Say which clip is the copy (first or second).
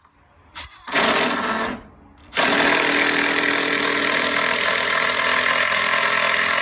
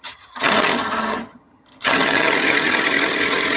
second